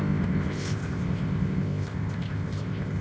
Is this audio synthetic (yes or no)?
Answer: yes